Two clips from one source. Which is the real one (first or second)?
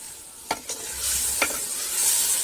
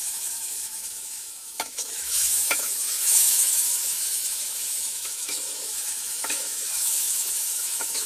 first